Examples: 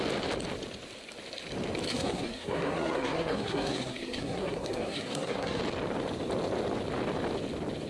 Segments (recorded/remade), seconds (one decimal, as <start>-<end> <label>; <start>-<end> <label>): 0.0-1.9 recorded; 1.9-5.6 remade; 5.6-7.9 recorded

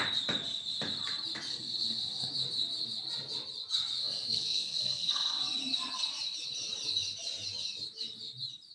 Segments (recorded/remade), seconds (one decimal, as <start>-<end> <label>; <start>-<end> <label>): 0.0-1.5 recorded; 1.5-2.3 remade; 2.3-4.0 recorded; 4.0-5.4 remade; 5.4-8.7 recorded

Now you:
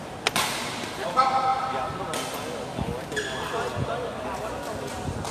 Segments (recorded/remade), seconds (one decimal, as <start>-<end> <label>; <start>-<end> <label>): 0.0-5.3 recorded

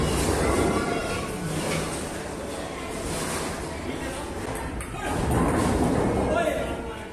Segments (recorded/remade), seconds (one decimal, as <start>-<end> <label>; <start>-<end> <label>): 0.0-7.1 recorded

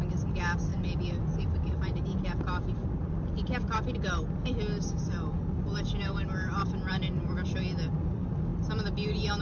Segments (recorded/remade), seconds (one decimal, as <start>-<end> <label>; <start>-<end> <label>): 0.0-9.4 recorded

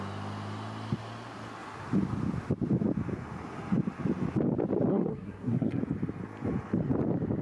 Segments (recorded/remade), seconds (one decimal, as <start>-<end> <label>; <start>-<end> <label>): 0.0-4.9 recorded; 4.9-5.8 remade; 5.8-7.4 recorded

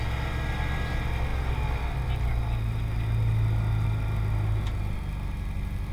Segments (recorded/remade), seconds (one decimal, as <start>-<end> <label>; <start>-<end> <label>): 0.0-5.9 recorded